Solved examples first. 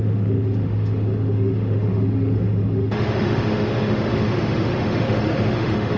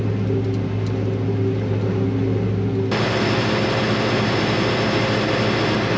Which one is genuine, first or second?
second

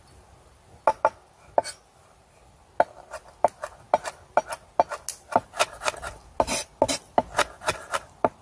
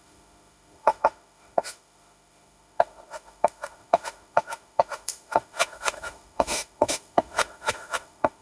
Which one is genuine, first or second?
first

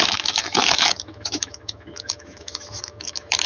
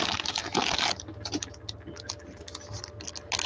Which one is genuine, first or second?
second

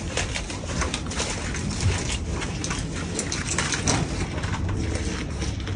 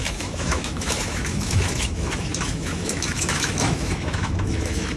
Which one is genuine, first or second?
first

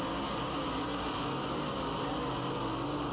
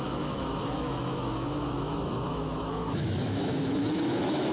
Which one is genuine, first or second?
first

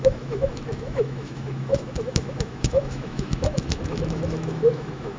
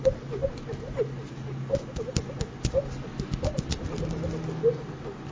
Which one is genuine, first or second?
second